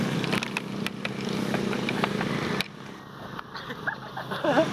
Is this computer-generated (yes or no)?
no